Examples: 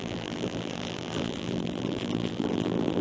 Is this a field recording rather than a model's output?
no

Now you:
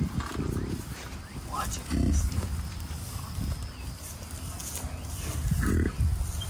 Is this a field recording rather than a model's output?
yes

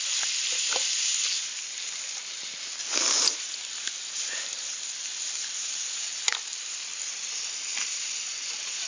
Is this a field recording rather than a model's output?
no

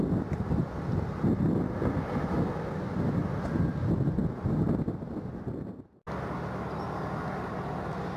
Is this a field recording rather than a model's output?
yes